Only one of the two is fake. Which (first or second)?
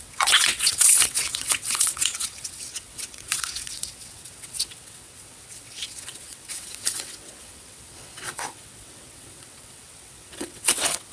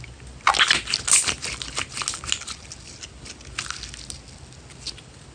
first